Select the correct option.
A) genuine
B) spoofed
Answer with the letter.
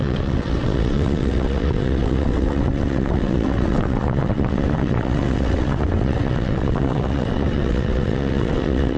B